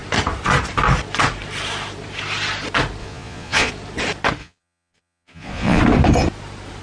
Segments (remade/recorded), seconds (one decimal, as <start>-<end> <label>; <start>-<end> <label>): 0.0-3.0 recorded; 3.0-3.7 remade; 3.7-4.4 recorded; 4.4-5.8 remade; 5.8-6.8 recorded